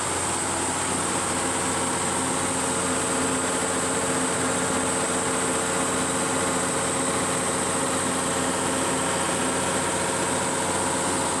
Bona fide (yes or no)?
yes